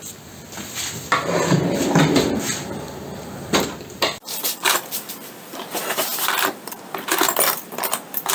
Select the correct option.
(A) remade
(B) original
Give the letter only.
A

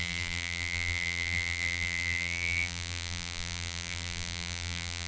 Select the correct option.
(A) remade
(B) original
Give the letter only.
A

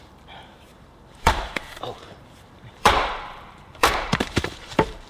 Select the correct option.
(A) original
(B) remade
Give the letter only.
B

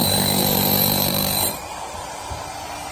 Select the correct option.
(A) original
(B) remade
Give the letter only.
B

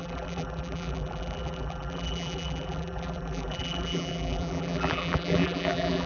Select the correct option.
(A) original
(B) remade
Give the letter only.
B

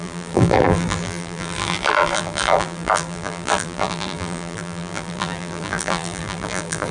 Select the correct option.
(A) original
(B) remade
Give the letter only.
B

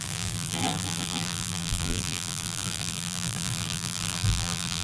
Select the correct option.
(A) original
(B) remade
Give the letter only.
B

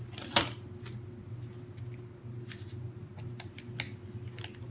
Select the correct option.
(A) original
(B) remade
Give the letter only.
A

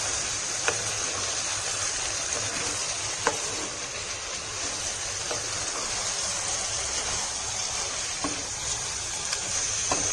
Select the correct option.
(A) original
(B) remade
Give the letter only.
B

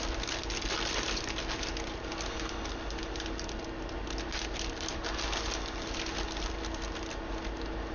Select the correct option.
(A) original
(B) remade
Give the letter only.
B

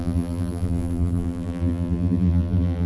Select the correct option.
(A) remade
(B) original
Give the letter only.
A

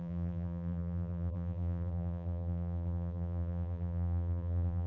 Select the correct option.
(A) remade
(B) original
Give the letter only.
A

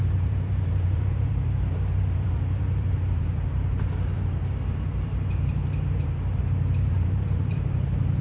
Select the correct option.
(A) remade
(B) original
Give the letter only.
A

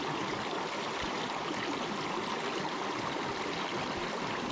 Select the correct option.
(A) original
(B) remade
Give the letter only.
A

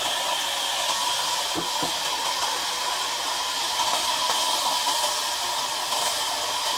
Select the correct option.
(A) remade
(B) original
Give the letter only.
B